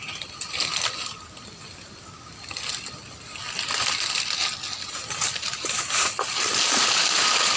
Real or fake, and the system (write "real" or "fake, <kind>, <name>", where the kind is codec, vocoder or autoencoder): real